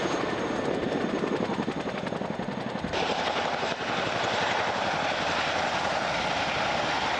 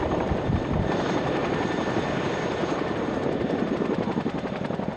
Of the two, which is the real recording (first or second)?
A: first